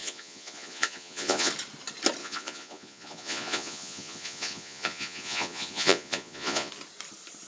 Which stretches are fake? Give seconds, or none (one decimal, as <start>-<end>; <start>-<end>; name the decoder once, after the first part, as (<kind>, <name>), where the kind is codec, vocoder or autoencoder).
0.0-1.5 (vocoder, Vocos); 2.2-6.7

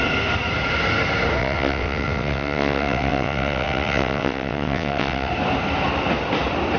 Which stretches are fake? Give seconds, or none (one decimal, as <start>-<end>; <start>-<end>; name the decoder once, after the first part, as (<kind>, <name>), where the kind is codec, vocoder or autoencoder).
1.4-5.3 (vocoder, WaveNeXt)